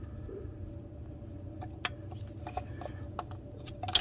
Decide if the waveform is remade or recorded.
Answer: recorded